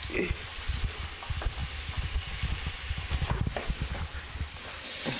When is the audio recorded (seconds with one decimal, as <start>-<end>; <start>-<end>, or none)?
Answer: 0.0-5.2